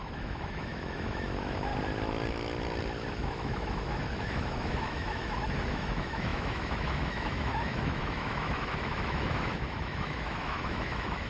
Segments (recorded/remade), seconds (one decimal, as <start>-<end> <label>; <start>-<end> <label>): 0.0-1.7 remade; 1.7-3.1 recorded; 3.1-11.3 remade